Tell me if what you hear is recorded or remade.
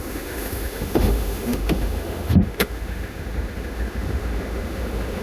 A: remade